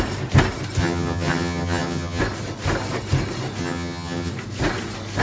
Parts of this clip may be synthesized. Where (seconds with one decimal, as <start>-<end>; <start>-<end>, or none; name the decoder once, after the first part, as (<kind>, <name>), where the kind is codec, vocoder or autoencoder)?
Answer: 0.8-2.2 (vocoder, HiFi-GAN); 3.6-4.3

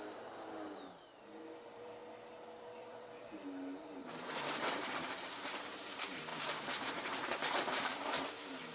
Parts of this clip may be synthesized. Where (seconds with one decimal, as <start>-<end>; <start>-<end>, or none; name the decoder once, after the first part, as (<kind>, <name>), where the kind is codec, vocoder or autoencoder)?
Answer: 0.0-2.0 (vocoder, BigVGAN v2); 2.6-8.7

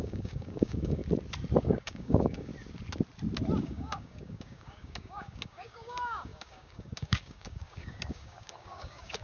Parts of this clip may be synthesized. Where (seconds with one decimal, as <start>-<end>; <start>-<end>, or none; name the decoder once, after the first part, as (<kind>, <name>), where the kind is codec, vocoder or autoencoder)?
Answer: 0.0-1.0 (codec, DAC); 1.6-2.5; 3.6-9.2

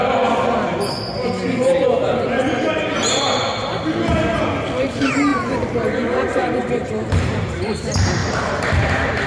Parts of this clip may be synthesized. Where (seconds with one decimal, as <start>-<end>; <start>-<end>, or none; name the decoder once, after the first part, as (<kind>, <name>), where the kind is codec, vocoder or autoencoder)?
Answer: 4.8-9.3 (vocoder, BigVGAN v2)

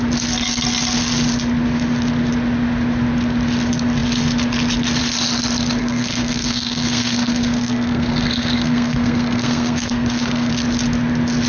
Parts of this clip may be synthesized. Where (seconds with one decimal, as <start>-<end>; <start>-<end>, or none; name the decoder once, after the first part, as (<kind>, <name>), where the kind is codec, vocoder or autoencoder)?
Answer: 5.8-10.5 (codec, SNAC)